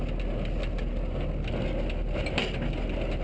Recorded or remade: recorded